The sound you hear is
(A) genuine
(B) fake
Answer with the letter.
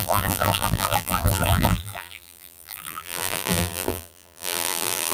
B